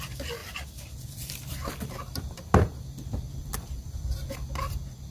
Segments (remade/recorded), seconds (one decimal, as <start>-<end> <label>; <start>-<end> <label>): 0.0-0.4 recorded; 0.4-3.5 remade; 3.5-5.1 recorded